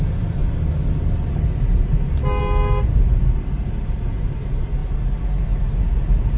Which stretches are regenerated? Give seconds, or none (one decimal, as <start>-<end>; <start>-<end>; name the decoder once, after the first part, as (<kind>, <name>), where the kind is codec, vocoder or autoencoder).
none